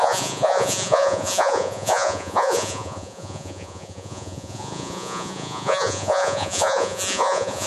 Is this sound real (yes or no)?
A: no